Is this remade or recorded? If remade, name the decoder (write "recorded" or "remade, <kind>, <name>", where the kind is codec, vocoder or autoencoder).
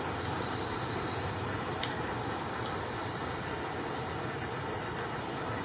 recorded